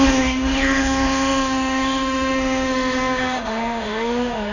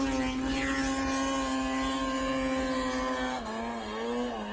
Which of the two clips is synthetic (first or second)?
first